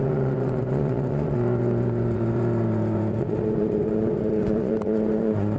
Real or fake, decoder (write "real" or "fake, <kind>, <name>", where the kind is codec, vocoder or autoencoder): fake, vocoder, Vocos